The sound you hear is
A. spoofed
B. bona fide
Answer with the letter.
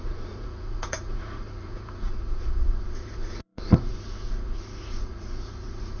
A